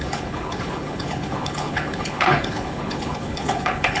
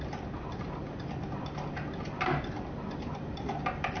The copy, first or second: first